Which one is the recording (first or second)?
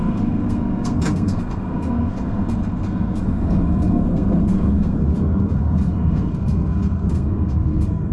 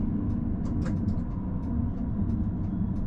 second